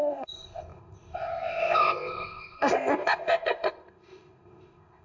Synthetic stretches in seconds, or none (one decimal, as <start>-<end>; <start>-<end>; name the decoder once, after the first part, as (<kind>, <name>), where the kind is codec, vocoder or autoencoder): 0.0-5.0 (codec, ZipCodec)